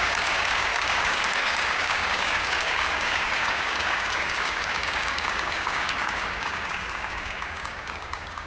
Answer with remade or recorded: remade